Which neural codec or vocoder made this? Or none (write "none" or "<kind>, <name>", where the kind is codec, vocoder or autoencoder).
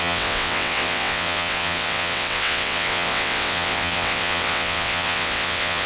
vocoder, WaveNeXt